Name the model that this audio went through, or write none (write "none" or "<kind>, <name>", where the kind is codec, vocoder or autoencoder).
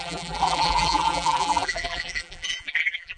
vocoder, BigVGAN v2